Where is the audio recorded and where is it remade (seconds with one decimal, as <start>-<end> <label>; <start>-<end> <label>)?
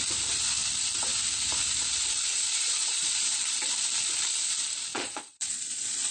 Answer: 0.0-2.3 recorded; 2.3-3.2 remade; 3.2-4.9 recorded; 4.9-6.1 remade